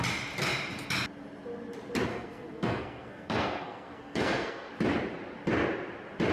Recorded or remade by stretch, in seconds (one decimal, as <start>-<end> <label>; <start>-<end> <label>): 0.0-2.1 recorded; 2.1-4.7 remade; 4.7-6.3 recorded